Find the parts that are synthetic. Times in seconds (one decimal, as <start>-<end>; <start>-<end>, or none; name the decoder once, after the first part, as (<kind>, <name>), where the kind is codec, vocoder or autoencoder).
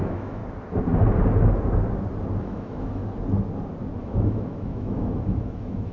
0.0-0.4 (autoencoder, DAC-VAE); 2.4-3.0; 4.0-5.9